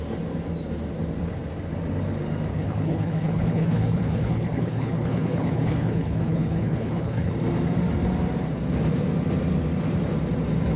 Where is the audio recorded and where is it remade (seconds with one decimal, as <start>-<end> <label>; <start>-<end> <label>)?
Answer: 0.0-2.5 recorded; 2.5-7.3 remade; 7.3-10.8 recorded